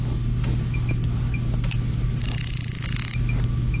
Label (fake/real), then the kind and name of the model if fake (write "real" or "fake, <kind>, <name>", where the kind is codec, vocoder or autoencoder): real